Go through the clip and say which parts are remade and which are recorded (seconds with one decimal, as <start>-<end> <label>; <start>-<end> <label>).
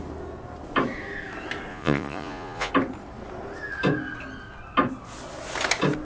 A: 0.0-1.7 recorded; 1.7-2.7 remade; 2.7-6.0 recorded